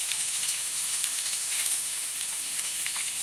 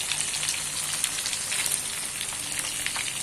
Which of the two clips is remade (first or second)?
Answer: first